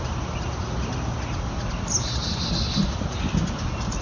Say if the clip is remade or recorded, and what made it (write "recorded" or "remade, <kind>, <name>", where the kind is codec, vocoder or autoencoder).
recorded